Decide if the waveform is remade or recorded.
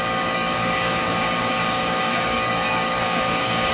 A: remade